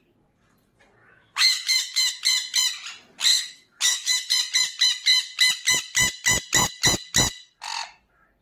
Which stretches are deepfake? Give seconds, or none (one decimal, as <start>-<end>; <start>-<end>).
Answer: 1.0-2.1; 3.3-4.3